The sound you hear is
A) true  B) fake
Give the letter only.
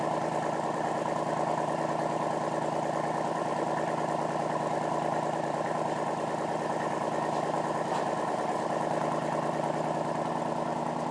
B